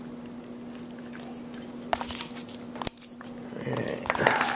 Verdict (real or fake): real